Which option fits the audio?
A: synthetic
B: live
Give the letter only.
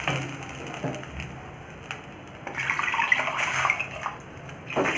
B